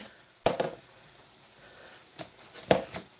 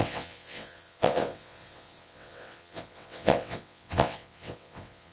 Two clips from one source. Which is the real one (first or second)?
first